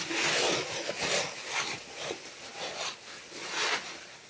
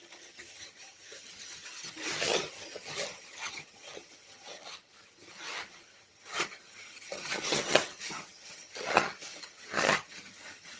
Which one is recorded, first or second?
first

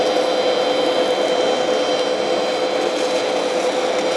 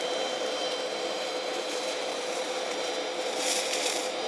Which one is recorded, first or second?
first